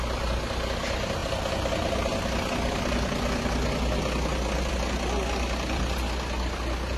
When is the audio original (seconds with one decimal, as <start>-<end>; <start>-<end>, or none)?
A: 0.0-7.0